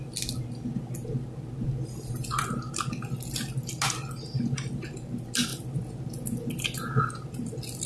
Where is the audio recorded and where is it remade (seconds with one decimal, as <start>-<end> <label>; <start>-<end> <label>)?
0.0-7.9 recorded